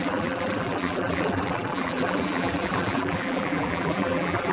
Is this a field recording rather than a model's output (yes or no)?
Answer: no